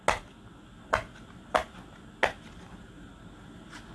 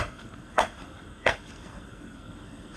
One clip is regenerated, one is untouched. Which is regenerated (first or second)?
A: second